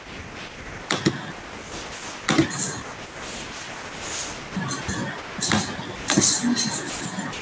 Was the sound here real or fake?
real